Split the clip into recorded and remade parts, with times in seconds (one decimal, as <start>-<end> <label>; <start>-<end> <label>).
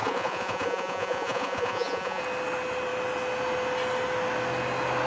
0.0-2.2 remade; 2.2-5.1 recorded